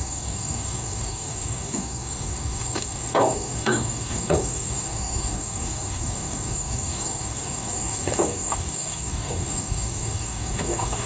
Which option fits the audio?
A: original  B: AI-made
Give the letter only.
B